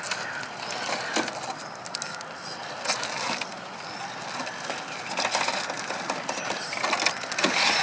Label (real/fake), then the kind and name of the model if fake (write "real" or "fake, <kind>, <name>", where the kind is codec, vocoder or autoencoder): real